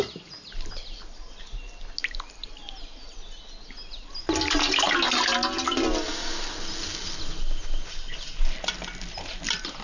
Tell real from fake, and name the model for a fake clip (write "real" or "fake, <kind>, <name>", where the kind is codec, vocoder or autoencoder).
real